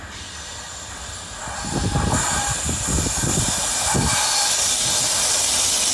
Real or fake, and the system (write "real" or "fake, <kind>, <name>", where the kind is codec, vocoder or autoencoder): real